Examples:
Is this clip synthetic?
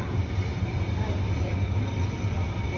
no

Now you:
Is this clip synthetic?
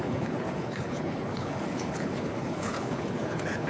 yes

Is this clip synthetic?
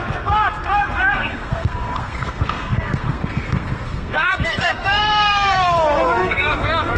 yes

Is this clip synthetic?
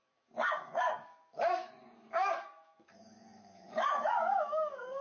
yes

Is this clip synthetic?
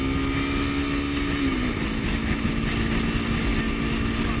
no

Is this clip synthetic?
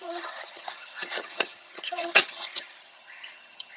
yes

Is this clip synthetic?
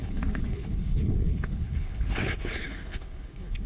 yes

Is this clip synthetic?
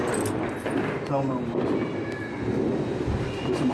no